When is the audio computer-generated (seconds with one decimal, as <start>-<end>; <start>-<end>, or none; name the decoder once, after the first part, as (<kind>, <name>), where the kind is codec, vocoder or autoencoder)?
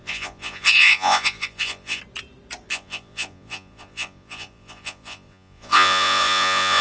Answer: 0.0-2.0 (vocoder, Vocos); 2.7-6.8